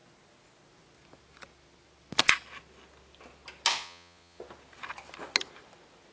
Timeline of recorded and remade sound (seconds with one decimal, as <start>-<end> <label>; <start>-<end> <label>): 0.0-3.7 recorded; 3.7-4.4 remade; 4.4-6.1 recorded